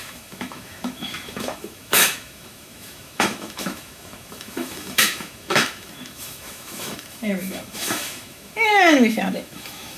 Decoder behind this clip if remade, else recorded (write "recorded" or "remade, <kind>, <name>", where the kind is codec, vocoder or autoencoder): remade, autoencoder, DAC-VAE